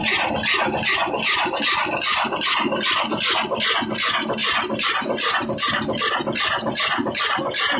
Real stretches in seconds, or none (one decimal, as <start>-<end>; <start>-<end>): 0.0-7.8